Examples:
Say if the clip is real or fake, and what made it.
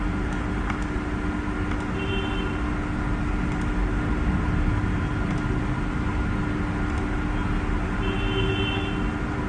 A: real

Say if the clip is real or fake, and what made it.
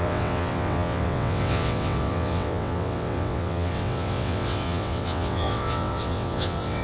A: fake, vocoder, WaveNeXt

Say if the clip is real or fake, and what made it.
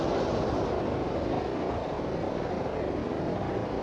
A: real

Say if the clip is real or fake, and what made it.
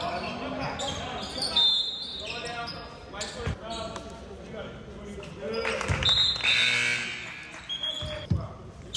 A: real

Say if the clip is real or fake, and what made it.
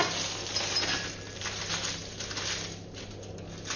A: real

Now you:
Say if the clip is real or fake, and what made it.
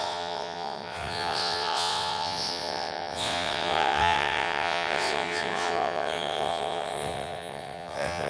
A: fake, vocoder, WaveNeXt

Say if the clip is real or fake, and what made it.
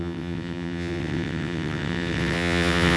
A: fake, vocoder, WaveNeXt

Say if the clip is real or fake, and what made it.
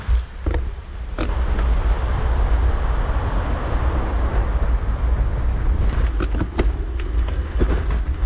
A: real